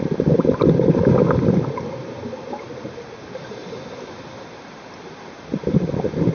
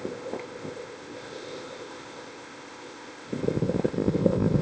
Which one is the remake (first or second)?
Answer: second